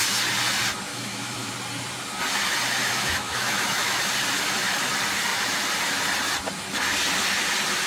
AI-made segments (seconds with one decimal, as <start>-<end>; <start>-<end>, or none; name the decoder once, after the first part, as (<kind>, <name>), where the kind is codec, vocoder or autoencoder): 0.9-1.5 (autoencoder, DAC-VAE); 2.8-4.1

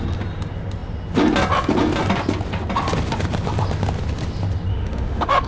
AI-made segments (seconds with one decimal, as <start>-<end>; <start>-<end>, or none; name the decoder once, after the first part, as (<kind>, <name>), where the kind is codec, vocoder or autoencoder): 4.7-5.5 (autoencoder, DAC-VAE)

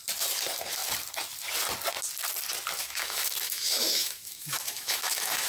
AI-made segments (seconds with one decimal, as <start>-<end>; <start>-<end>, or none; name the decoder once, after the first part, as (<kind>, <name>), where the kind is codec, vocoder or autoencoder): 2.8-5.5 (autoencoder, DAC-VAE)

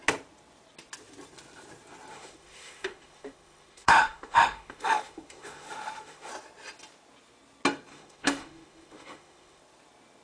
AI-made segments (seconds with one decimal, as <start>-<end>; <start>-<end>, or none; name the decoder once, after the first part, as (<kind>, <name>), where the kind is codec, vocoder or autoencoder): 2.1-6.3 (autoencoder, DAC-VAE); 7.9-9.6

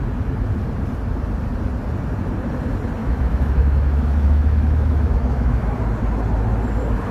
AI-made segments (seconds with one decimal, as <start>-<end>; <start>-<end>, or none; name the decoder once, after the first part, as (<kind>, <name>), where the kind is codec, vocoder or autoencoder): 3.0-5.7 (autoencoder, DAC-VAE)